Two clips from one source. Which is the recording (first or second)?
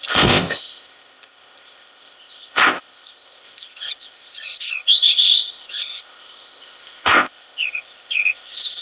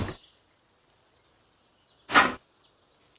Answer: second